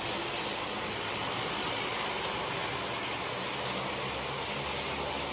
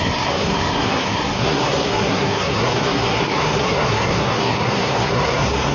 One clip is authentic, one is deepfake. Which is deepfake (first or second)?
second